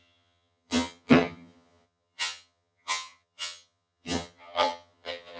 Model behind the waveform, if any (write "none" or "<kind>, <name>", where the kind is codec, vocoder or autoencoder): vocoder, HiFi-GAN